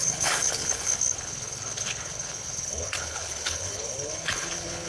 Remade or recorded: remade